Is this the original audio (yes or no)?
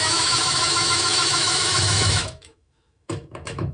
no